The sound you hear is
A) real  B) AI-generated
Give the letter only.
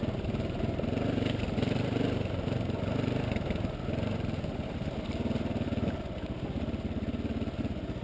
A